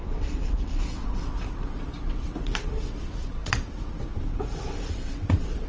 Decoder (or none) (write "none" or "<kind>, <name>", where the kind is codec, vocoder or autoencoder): vocoder, WaveNeXt